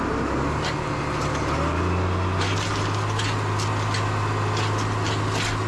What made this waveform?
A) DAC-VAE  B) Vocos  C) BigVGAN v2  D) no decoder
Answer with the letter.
D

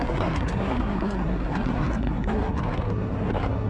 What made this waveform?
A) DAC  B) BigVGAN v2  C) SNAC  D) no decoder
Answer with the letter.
C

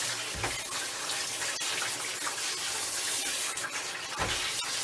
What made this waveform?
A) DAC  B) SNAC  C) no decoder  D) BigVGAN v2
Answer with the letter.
C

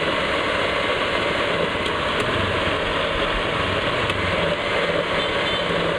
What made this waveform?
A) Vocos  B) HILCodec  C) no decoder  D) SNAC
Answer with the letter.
C